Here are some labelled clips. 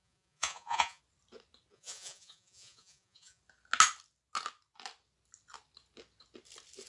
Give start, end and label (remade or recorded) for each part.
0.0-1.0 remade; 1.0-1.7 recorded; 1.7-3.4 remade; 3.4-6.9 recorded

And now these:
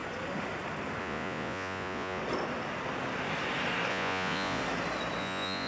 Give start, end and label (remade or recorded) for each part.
0.0-1.0 recorded; 1.0-2.2 remade; 2.2-3.9 recorded; 3.9-4.6 remade; 4.6-5.2 recorded; 5.2-5.7 remade

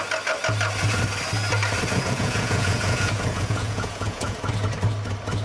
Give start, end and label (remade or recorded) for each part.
0.0-1.9 recorded; 1.9-4.4 remade; 4.4-5.4 recorded

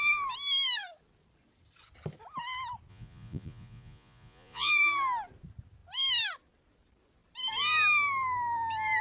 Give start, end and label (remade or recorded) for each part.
0.0-2.9 recorded; 2.9-4.7 remade; 4.7-9.0 recorded

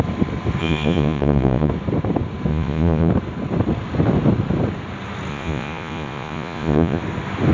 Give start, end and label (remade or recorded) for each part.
0.0-0.6 recorded; 0.6-1.7 remade; 1.7-2.5 recorded; 2.5-3.1 remade; 3.1-5.3 recorded; 5.3-7.0 remade; 7.0-7.5 recorded

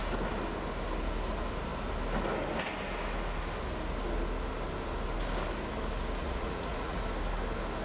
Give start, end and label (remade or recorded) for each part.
0.0-6.2 recorded; 6.2-7.0 remade; 7.0-7.8 recorded

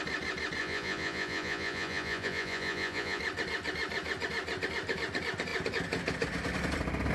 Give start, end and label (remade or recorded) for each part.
0.0-0.6 recorded; 0.6-3.2 remade; 3.2-7.1 recorded